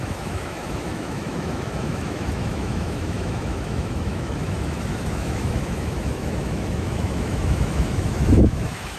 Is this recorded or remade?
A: remade